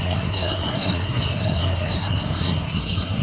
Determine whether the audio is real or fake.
fake